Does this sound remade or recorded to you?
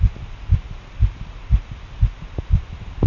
recorded